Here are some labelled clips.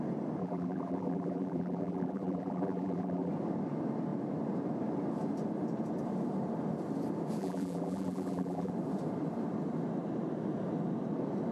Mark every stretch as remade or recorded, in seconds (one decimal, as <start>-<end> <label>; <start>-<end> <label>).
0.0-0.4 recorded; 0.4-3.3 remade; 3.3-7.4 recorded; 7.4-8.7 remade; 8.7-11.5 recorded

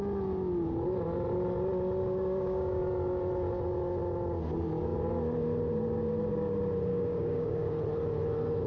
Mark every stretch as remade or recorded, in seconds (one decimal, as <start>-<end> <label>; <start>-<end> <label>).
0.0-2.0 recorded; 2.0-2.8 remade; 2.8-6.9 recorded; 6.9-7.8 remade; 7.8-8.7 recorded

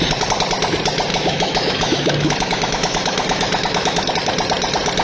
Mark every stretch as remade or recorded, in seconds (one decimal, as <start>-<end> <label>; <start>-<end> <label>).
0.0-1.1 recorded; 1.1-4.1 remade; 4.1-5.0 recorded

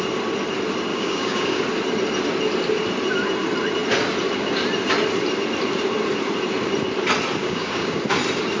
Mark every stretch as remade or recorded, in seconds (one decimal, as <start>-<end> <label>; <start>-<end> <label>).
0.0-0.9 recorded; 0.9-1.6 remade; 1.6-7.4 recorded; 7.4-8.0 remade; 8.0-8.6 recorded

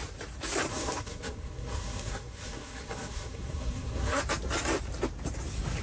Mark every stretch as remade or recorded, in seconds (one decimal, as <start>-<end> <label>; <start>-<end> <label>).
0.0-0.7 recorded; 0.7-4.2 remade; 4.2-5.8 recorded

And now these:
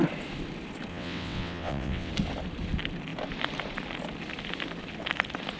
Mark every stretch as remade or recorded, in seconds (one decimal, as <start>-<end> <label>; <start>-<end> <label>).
0.0-0.9 recorded; 0.9-2.1 remade; 2.1-5.6 recorded

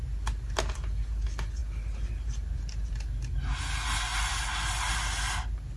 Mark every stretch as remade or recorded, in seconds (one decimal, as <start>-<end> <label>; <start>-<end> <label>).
0.0-5.8 recorded

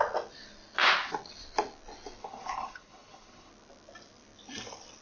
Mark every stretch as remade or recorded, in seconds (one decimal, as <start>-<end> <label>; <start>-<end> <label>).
0.0-2.2 recorded; 2.2-3.5 remade; 3.5-5.0 recorded